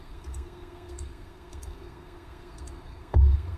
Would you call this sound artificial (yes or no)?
yes